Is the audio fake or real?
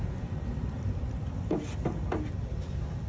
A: fake